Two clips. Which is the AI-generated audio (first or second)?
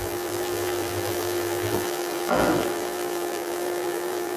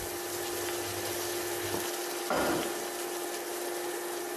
first